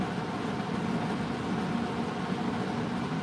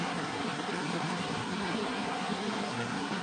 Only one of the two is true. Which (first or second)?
first